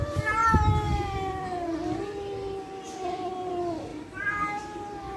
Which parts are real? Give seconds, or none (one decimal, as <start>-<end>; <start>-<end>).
0.0-5.2